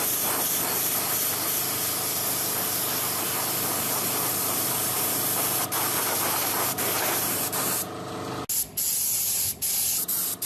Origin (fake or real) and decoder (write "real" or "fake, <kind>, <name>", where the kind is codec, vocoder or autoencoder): real